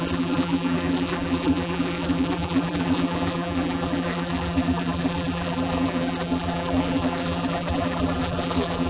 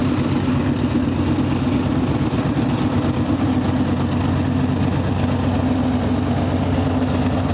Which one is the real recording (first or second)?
second